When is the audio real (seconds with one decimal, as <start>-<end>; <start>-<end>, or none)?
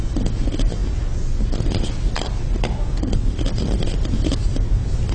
0.0-5.1